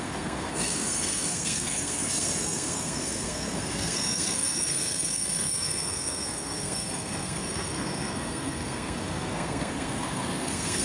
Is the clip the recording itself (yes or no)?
no